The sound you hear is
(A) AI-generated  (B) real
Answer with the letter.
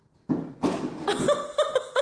B